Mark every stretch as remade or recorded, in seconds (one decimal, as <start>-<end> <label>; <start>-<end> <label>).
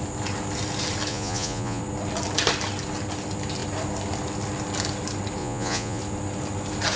0.0-1.1 recorded; 1.1-1.8 remade; 1.8-5.4 recorded; 5.4-6.0 remade; 6.0-7.0 recorded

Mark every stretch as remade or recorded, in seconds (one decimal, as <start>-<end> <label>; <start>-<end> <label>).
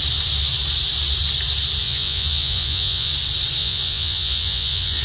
0.0-1.8 recorded; 1.8-3.1 remade; 3.1-3.6 recorded; 3.6-5.0 remade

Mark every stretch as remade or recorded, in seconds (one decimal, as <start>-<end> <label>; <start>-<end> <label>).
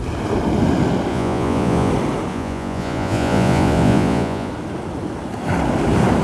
0.0-1.1 recorded; 1.1-1.9 remade; 1.9-2.3 recorded; 2.3-4.5 remade; 4.5-6.2 recorded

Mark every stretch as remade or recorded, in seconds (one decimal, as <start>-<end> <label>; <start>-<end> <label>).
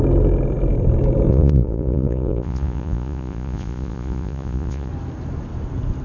0.0-1.3 recorded; 1.3-4.9 remade; 4.9-6.0 recorded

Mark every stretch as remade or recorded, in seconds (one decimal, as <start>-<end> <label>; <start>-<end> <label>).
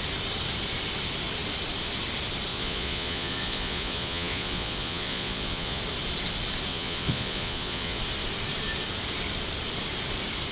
0.0-2.5 recorded; 2.5-5.8 remade; 5.8-6.7 recorded; 6.7-8.0 remade; 8.0-10.5 recorded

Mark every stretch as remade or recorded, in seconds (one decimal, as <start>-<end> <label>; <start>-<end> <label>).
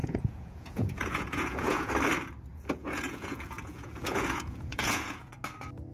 0.0-1.9 remade; 1.9-2.5 recorded; 2.5-5.3 remade; 5.3-5.9 recorded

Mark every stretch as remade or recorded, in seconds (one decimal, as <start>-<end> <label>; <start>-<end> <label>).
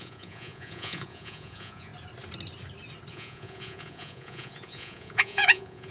0.0-1.9 remade; 1.9-3.1 recorded; 3.1-5.9 remade